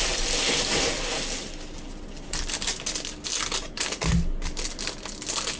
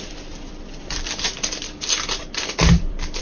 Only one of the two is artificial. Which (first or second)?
second